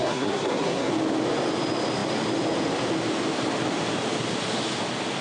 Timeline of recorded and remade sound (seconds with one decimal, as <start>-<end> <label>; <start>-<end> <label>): 0.0-0.9 remade; 0.9-5.2 recorded